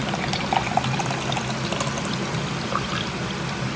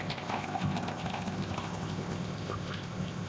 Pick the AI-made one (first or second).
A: second